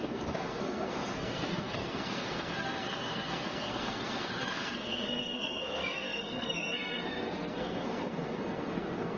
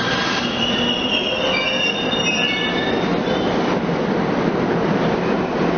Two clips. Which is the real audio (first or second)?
second